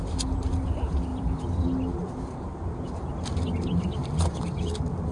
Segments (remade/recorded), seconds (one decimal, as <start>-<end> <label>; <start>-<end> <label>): 0.0-5.1 recorded